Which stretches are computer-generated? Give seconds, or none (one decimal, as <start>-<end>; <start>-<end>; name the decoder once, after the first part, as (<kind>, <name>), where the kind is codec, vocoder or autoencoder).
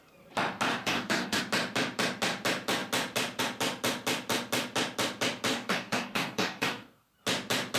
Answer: 0.7-1.4 (codec, DAC); 5.5-7.1